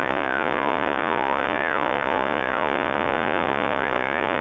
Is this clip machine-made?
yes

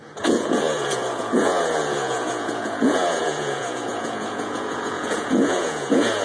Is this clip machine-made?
yes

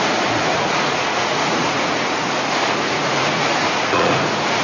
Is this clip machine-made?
yes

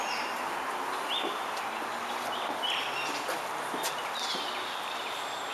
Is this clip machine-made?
no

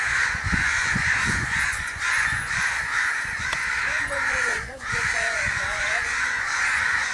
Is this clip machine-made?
yes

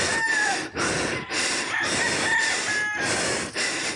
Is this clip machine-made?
no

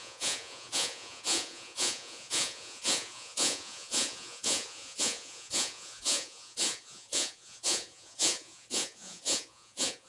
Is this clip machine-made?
yes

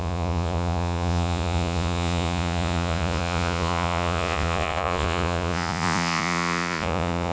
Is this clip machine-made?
yes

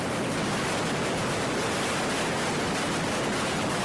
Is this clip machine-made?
no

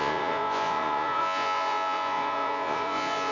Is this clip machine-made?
yes